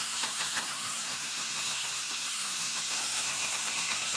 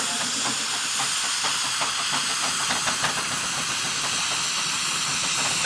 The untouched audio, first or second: second